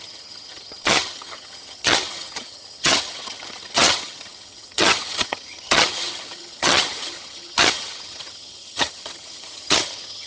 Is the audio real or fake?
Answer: fake